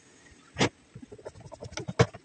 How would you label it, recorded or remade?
recorded